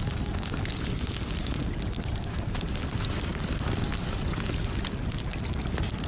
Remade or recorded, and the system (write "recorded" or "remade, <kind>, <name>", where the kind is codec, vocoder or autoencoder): recorded